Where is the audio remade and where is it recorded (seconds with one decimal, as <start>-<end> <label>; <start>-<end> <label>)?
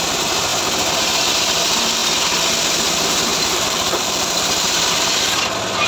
0.0-3.3 recorded; 3.3-5.3 remade; 5.3-5.9 recorded